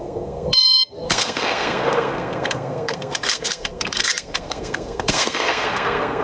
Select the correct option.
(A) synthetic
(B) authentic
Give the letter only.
A